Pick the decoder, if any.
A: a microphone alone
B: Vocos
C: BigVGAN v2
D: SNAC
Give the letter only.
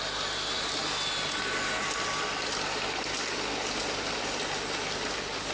A